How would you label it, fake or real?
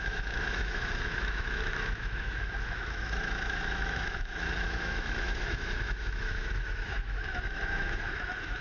fake